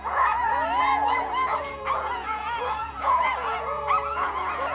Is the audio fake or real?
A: fake